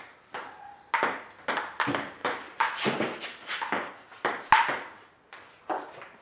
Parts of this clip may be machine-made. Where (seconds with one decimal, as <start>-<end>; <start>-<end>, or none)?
none